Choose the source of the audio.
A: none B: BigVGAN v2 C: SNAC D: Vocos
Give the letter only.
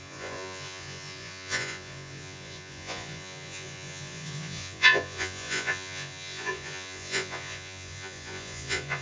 D